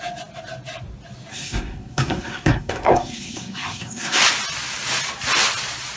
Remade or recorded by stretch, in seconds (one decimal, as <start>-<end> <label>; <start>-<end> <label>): 0.0-1.3 recorded; 1.3-4.2 remade; 4.2-6.0 recorded